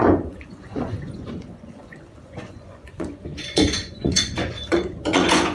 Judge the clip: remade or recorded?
remade